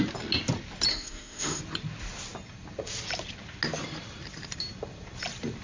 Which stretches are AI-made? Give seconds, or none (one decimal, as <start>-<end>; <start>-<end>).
0.9-1.6